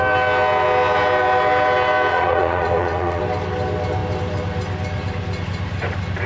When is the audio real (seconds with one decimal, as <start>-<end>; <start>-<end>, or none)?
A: 0.0-2.1; 3.2-6.3